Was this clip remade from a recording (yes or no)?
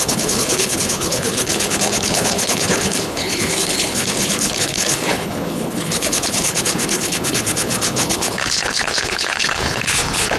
yes